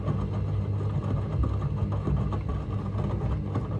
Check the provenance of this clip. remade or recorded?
recorded